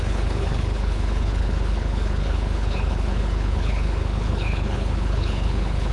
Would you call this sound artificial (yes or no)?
yes